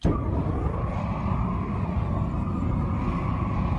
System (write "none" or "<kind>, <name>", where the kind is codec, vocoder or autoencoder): none